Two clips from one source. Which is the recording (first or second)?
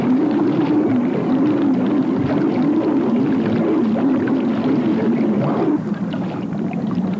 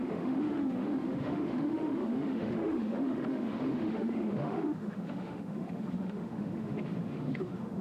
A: first